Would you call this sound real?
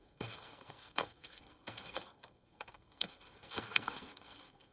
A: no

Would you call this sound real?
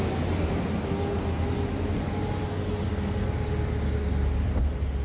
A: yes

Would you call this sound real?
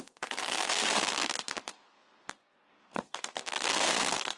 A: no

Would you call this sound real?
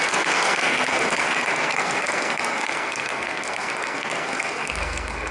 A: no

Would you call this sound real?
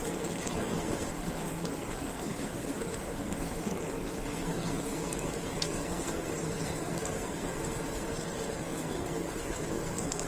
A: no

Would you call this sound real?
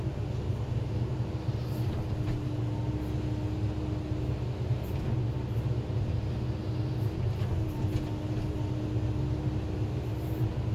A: yes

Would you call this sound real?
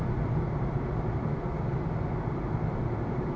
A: yes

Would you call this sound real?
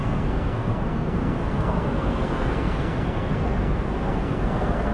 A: no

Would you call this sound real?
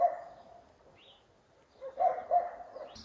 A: yes